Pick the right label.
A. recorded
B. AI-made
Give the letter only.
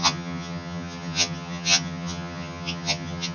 B